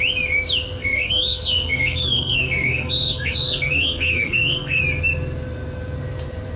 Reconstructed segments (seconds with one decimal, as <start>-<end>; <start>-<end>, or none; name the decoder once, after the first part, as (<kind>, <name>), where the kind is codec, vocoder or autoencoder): 0.8-4.8 (codec, SNAC)